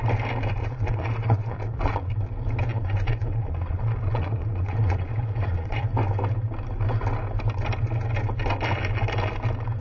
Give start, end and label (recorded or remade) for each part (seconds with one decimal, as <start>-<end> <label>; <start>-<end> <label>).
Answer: 0.0-0.6 recorded; 0.6-2.1 remade; 2.1-2.7 recorded; 2.7-5.8 remade; 5.8-9.8 recorded